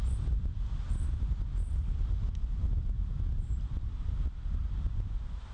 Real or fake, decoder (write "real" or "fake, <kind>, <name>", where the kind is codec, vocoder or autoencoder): real